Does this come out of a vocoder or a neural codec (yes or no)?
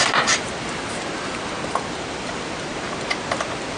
no